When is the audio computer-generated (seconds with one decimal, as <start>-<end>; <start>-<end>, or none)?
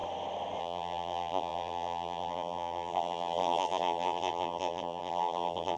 0.6-5.8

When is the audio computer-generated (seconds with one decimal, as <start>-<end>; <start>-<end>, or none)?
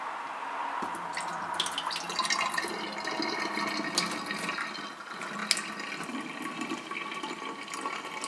none